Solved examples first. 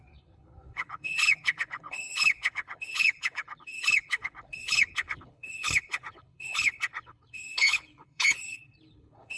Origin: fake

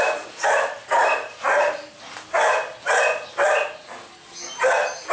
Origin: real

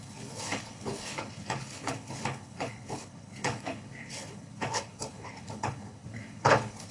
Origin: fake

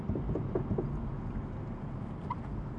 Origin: real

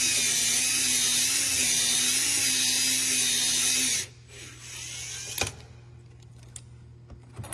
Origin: real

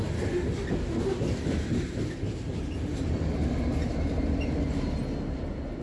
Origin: real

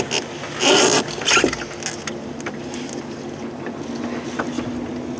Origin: real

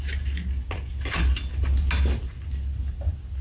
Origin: real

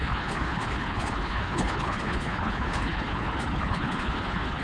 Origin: fake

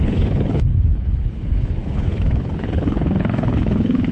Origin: fake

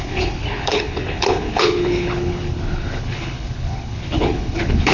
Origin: fake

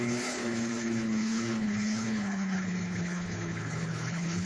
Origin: fake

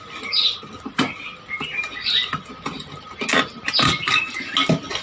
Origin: real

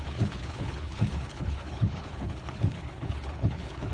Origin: fake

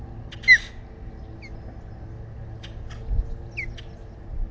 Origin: real